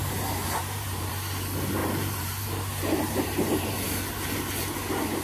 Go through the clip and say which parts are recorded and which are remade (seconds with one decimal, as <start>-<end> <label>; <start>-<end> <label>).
0.0-1.1 remade; 1.1-1.8 recorded; 1.8-3.7 remade; 3.7-5.2 recorded